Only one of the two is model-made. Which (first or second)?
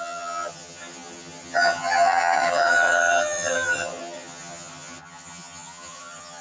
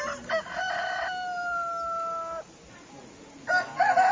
first